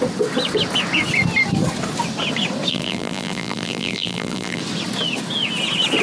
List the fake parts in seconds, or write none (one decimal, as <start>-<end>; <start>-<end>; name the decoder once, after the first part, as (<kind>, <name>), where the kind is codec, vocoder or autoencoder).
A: 2.7-4.6 (vocoder, BigVGAN v2)